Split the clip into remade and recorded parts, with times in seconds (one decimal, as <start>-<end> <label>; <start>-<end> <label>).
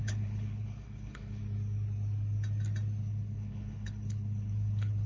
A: 0.0-1.4 remade; 1.4-3.0 recorded; 3.0-5.1 remade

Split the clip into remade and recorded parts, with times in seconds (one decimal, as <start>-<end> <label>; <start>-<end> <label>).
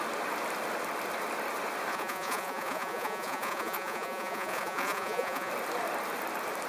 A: 0.0-1.9 recorded; 1.9-5.5 remade; 5.5-6.7 recorded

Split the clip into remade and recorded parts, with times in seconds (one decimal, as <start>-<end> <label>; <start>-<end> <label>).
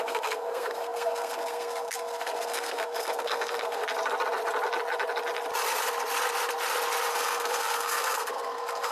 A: 0.0-3.8 remade; 3.8-7.1 recorded; 7.1-8.9 remade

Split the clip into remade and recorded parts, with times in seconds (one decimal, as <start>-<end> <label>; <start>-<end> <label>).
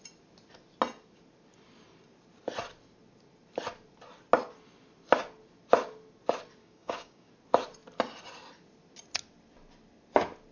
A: 0.0-6.6 recorded; 6.6-7.3 remade; 7.3-10.5 recorded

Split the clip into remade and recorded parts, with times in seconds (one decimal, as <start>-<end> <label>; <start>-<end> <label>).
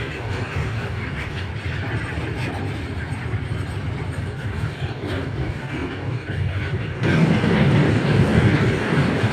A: 0.0-1.5 remade; 1.5-4.2 recorded; 4.2-9.3 remade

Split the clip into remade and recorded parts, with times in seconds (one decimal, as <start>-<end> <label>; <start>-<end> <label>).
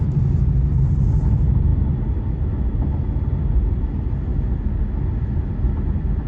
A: 0.0-6.3 recorded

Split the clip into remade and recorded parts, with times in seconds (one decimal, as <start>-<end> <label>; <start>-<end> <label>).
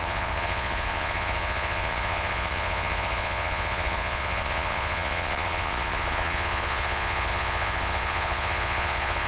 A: 0.0-9.3 remade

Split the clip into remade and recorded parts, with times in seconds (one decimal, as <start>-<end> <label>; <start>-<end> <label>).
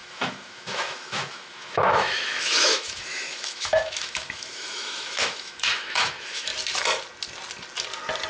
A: 0.0-6.5 remade; 6.5-8.3 recorded